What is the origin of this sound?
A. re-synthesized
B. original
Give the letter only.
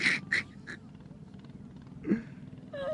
B